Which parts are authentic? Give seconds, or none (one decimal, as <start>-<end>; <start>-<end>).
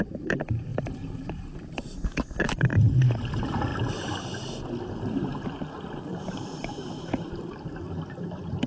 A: 2.7-3.3; 3.7-4.9